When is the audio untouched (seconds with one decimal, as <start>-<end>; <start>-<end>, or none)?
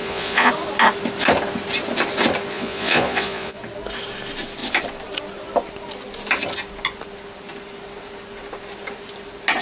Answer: 0.5-2.5; 3.6-9.6